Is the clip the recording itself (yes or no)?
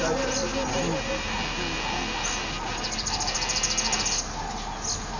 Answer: yes